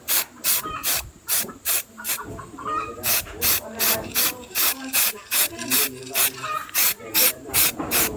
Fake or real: fake